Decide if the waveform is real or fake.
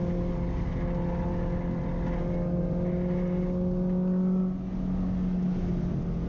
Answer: real